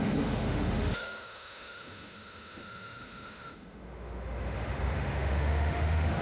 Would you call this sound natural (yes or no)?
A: no